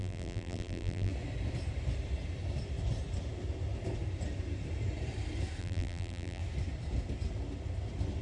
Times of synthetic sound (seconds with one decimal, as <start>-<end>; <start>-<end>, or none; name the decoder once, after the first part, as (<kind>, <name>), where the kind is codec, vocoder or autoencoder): 0.0-1.1 (vocoder, BigVGAN v2); 5.6-6.4